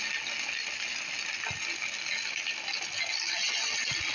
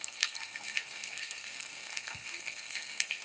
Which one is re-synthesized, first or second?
second